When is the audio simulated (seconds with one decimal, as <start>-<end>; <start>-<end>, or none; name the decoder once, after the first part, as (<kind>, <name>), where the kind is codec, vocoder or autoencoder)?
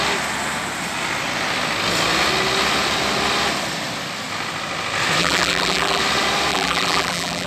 5.2-6.0 (vocoder, BigVGAN v2); 6.5-7.5